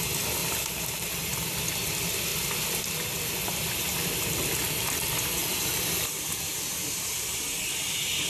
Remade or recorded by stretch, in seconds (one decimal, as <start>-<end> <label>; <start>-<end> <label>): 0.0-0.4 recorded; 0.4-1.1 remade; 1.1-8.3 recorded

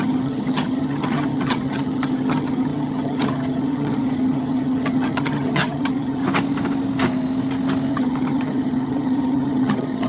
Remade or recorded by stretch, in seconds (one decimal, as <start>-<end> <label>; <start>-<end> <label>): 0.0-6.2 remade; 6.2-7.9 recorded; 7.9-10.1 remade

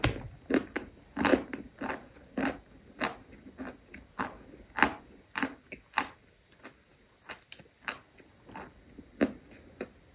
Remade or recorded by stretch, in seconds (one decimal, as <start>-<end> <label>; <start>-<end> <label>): 0.0-10.1 recorded